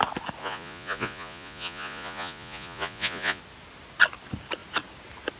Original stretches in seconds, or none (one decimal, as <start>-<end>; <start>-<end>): 0.0-0.4; 3.4-5.4